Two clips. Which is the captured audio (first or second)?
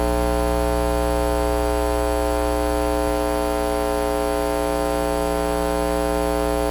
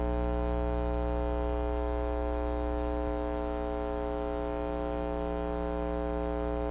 first